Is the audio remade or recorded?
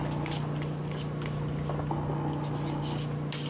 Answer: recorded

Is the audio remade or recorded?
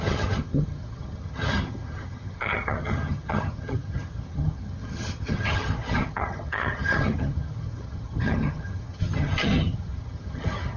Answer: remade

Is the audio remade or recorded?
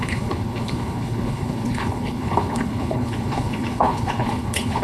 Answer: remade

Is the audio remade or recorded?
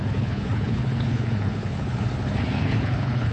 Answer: remade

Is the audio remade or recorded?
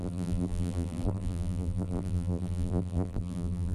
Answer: remade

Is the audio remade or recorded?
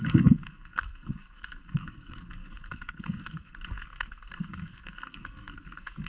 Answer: remade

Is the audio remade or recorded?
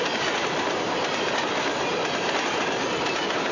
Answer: recorded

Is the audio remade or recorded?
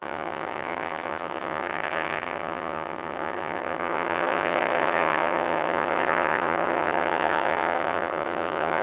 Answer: remade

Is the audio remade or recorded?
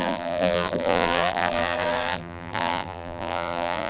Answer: remade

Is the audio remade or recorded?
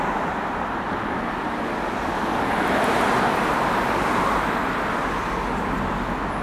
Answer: recorded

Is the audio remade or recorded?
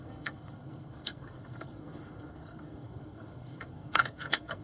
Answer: remade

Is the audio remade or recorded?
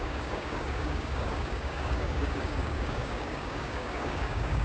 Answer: remade